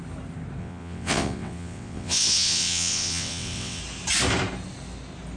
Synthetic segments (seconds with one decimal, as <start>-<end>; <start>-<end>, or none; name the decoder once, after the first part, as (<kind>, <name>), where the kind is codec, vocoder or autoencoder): 0.6-3.8 (vocoder, WaveNeXt)